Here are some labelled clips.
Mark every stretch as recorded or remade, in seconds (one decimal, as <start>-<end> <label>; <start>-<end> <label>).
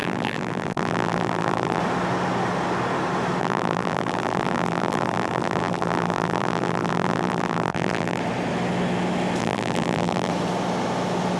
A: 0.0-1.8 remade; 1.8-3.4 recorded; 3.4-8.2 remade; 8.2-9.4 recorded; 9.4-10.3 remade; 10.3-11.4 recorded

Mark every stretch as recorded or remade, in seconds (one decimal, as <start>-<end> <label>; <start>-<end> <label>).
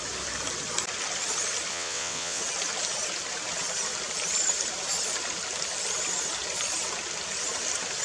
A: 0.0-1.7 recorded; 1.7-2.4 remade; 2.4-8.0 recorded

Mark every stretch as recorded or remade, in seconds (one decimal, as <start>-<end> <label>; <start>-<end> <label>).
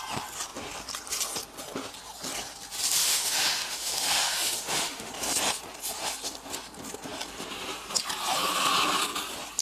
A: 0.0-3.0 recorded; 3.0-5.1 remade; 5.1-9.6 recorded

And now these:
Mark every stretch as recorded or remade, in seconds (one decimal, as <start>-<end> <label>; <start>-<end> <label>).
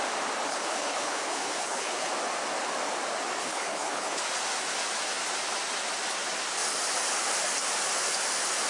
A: 0.0-0.5 recorded; 0.5-2.1 remade; 2.1-3.4 recorded; 3.4-4.2 remade; 4.2-8.7 recorded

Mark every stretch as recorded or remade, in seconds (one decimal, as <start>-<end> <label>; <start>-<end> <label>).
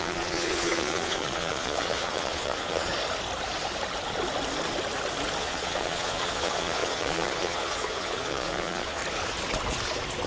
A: 0.0-2.9 remade; 2.9-5.4 recorded; 5.4-9.0 remade; 9.0-10.3 recorded